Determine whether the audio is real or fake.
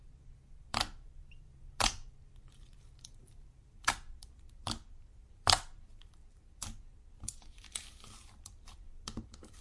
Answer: fake